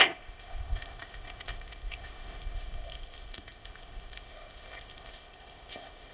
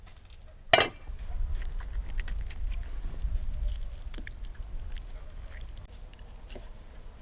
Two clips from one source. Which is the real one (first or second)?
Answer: second